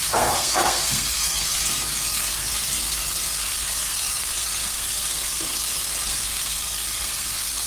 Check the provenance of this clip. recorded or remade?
remade